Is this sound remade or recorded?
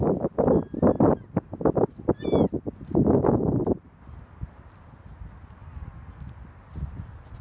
recorded